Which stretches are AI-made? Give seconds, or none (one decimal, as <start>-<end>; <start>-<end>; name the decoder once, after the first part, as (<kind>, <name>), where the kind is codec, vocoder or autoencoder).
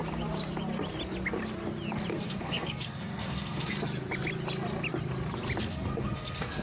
2.1-3.8 (codec, SNAC); 5.6-6.6